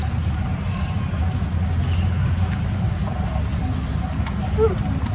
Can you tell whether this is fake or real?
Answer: real